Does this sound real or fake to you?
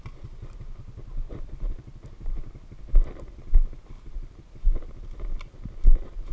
real